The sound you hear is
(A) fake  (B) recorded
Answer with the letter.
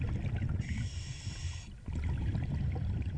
B